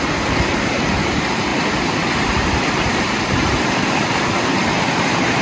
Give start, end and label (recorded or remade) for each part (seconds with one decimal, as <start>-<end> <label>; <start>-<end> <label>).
0.0-1.5 remade; 1.5-2.2 recorded; 2.2-3.5 remade; 3.5-4.6 recorded; 4.6-5.4 remade